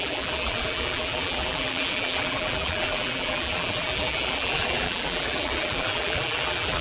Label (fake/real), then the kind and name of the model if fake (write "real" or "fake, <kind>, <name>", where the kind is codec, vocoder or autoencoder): fake, vocoder, BigVGAN v2